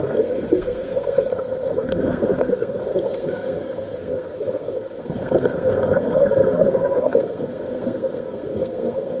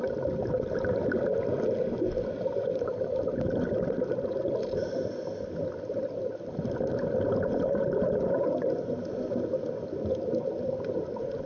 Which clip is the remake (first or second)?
first